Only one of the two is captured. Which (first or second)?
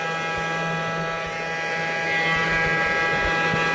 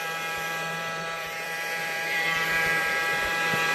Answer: first